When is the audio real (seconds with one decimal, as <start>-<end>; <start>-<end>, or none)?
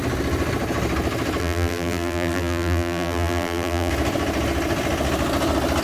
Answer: 0.0-1.4; 3.9-5.8